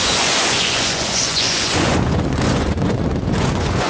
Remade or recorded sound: remade